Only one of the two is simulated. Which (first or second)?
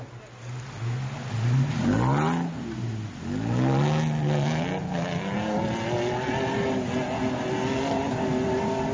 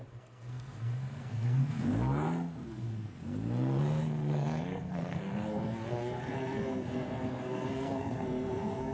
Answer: second